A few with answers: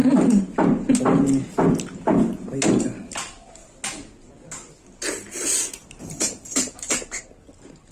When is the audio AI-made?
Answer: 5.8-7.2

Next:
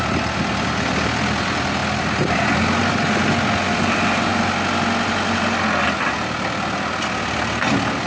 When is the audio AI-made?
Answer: none